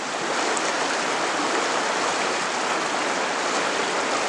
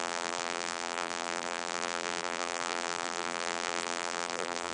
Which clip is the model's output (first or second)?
second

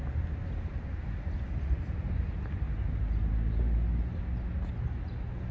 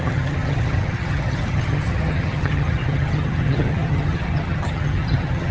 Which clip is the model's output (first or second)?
second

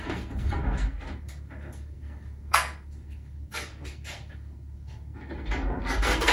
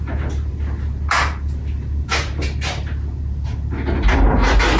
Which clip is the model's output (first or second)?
first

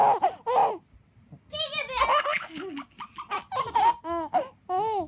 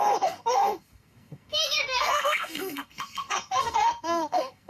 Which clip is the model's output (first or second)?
second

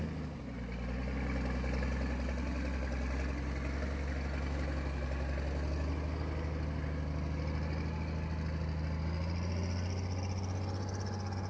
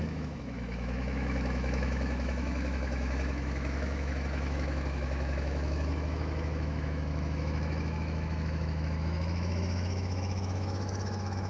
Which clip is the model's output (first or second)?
second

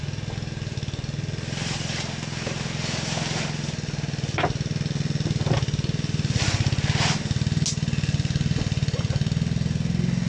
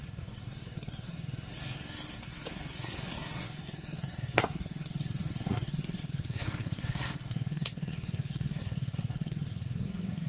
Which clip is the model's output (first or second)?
second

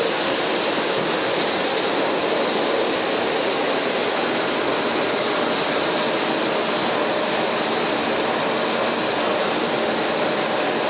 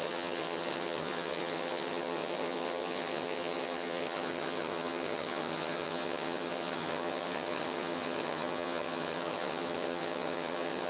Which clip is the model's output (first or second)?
second